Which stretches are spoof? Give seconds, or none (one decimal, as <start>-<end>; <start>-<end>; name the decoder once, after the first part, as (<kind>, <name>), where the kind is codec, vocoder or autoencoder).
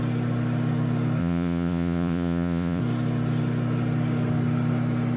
1.2-2.8 (vocoder, Vocos)